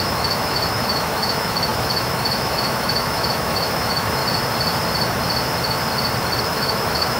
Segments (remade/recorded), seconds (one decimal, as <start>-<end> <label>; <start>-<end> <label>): 0.0-4.2 remade; 4.2-6.4 recorded; 6.4-7.2 remade

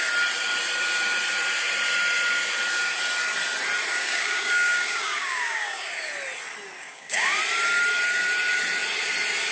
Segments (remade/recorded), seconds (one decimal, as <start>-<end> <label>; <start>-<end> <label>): 0.0-3.9 recorded; 3.9-6.1 remade; 6.1-6.8 recorded; 6.8-7.4 remade; 7.4-9.5 recorded

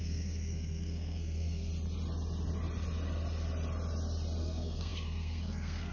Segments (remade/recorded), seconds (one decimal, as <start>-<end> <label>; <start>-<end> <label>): 0.0-1.7 remade; 1.7-4.4 recorded; 4.4-5.9 remade

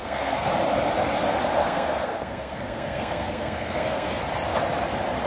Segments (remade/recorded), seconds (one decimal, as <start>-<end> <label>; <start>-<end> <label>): 0.0-0.5 remade; 0.5-1.6 recorded; 1.6-4.2 remade; 4.2-5.3 recorded